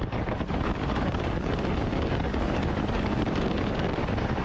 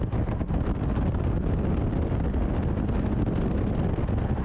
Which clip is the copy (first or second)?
first